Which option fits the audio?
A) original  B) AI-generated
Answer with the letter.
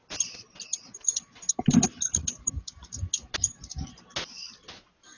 A